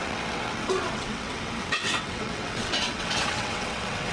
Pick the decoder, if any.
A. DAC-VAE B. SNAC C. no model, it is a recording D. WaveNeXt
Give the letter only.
D